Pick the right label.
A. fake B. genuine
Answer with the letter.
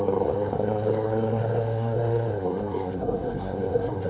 A